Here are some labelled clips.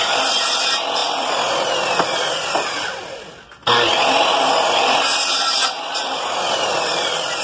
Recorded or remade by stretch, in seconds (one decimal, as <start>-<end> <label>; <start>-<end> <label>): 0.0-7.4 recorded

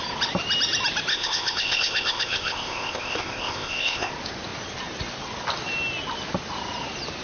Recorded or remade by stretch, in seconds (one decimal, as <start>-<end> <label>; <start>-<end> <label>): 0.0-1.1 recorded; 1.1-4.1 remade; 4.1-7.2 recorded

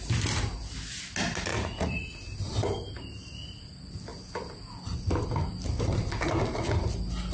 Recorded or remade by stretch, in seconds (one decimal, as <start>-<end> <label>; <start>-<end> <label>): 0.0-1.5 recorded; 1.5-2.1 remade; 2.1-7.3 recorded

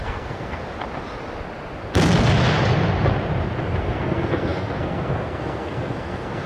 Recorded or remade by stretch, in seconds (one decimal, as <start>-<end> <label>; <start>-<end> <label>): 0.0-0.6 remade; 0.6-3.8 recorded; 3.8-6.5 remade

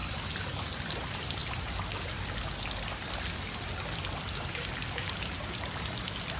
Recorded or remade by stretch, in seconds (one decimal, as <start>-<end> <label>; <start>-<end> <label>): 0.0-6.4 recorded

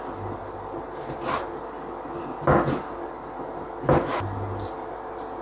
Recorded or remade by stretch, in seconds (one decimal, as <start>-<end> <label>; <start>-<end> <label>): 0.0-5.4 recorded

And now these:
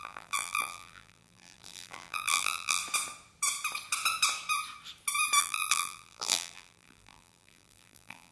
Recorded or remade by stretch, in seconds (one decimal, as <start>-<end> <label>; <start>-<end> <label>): 0.0-2.8 remade; 2.8-5.4 recorded; 5.4-8.3 remade

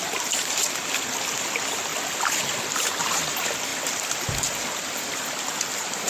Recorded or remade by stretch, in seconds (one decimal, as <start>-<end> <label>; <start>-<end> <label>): 0.0-3.7 recorded; 3.7-5.3 remade; 5.3-6.1 recorded